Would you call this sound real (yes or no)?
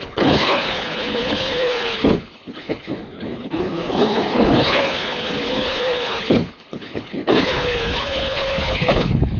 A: no